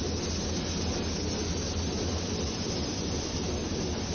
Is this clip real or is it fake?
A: real